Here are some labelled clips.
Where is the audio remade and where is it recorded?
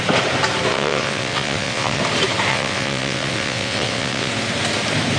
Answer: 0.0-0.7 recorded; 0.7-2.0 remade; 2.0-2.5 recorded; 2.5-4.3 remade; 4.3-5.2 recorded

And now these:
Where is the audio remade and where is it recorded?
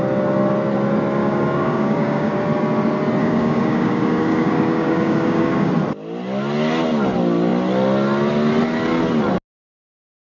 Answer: 0.0-1.2 recorded; 1.2-2.3 remade; 2.3-3.2 recorded; 3.2-5.7 remade; 5.7-10.2 recorded